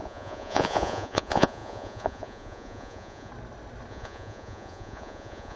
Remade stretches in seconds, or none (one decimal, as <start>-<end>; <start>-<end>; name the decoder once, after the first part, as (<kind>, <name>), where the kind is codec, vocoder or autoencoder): 0.0-3.3 (vocoder, Vocos); 3.9-5.6